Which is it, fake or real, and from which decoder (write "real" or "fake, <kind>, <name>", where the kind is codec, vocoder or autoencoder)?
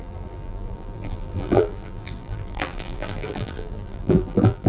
fake, vocoder, BigVGAN v2